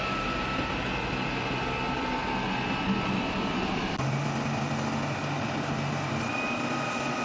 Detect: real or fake real